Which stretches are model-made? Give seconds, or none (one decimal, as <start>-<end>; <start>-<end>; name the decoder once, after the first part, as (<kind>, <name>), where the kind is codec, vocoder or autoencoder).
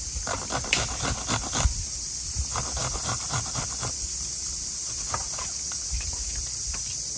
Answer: none